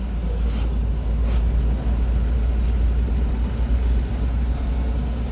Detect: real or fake real